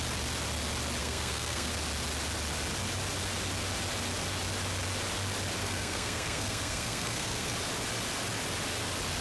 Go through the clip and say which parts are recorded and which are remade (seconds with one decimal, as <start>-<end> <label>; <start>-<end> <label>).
0.0-1.0 recorded; 1.0-1.7 remade; 1.7-5.6 recorded; 5.6-7.5 remade; 7.5-9.2 recorded